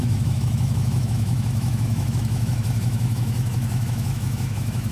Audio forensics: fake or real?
fake